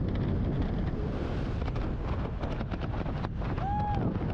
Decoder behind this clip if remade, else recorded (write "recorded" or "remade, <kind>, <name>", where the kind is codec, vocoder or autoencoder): recorded